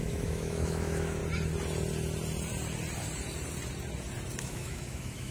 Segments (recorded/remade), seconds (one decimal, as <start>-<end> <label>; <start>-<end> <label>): 0.0-1.2 remade; 1.2-4.4 recorded; 4.4-5.3 remade